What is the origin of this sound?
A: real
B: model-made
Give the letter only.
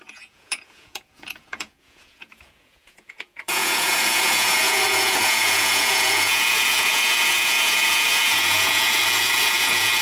B